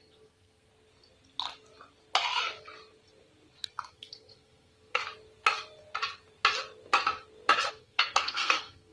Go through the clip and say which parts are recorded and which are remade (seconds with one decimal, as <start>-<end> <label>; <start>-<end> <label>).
0.0-0.7 remade; 0.7-3.9 recorded; 3.9-5.0 remade; 5.0-7.7 recorded; 7.7-8.9 remade